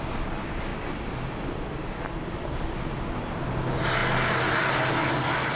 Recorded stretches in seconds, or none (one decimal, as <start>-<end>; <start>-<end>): 0.0-5.6

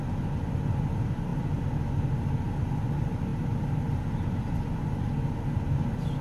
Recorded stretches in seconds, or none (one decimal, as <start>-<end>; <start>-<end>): 0.0-6.2

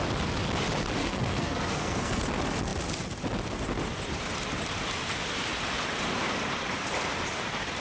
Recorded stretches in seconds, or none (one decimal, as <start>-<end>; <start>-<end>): 0.0-1.0; 2.2-7.8